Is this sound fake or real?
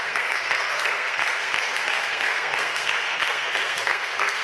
fake